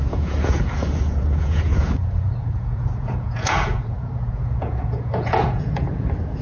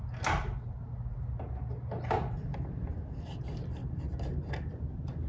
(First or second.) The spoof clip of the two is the first